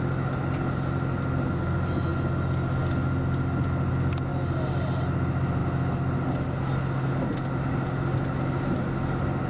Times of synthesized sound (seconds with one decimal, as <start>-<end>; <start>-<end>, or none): none